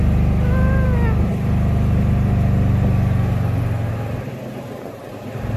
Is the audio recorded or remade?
recorded